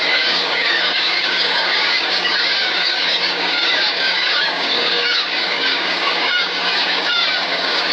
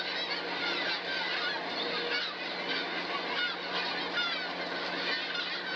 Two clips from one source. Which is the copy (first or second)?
first